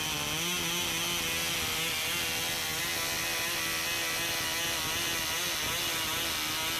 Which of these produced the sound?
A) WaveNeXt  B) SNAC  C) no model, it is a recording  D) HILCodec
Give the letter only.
C